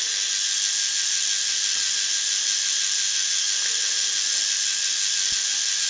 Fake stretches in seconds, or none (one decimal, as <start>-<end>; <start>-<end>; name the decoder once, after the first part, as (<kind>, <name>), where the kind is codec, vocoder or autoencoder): none